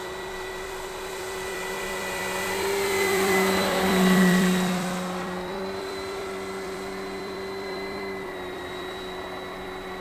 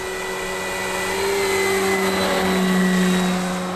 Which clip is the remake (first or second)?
first